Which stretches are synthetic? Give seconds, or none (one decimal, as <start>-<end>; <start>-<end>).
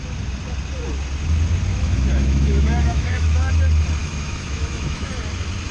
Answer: 1.7-3.5; 4.0-5.1